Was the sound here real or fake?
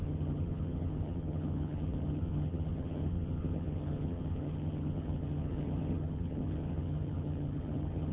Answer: fake